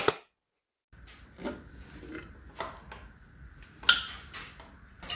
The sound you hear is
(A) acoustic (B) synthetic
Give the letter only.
A